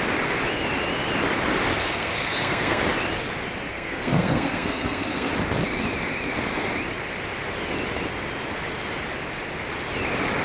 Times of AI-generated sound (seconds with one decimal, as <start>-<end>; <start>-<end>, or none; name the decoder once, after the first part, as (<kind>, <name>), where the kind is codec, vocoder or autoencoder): 1.8-2.8 (codec, SNAC); 3.7-5.3